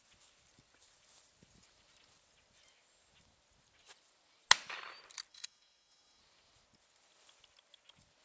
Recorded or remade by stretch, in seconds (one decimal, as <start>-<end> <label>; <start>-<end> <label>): 0.0-5.3 recorded; 5.3-6.2 remade; 6.2-8.2 recorded